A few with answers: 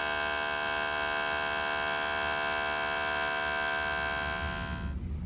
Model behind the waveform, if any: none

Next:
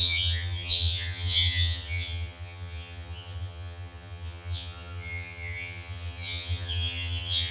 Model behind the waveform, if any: vocoder, HiFi-GAN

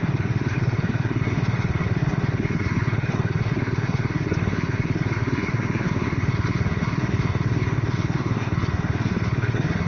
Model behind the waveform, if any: codec, SNAC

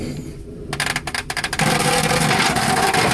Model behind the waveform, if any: none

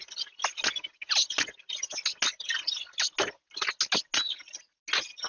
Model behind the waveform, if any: none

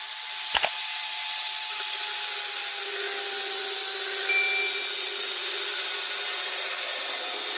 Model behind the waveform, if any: none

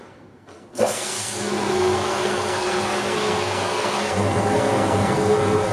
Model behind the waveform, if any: codec, SNAC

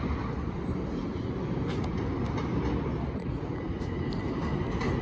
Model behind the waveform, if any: none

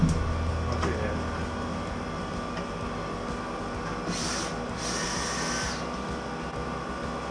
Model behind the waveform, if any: none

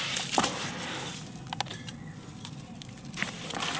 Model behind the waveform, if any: none